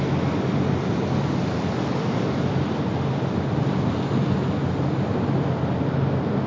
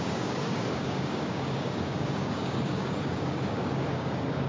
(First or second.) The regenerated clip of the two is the second